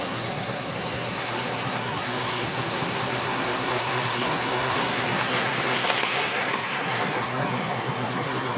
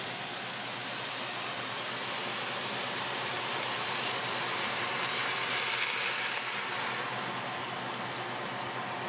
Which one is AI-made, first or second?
first